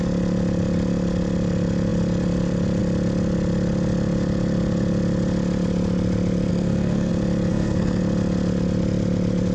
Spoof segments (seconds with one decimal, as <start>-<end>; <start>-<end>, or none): 6.5-7.1; 7.5-8.0